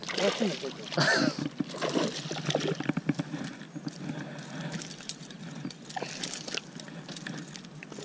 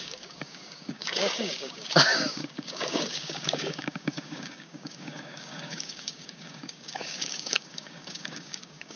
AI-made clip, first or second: second